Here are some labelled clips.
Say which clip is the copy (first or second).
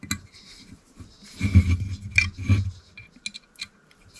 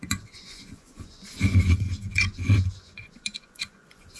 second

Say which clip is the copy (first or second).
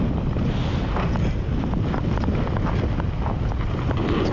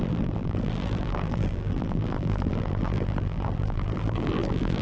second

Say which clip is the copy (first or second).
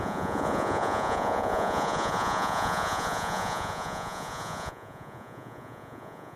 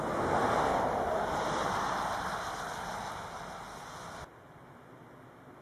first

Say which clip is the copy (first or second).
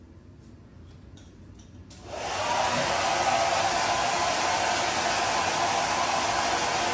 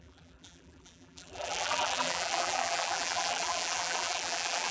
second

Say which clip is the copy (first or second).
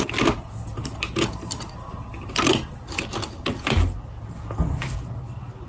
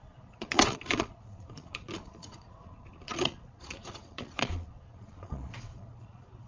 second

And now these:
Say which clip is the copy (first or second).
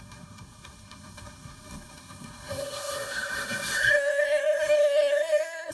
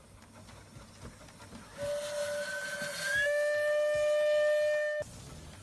first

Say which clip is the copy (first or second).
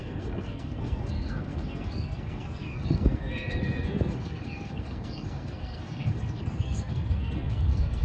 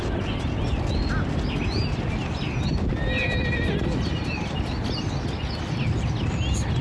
first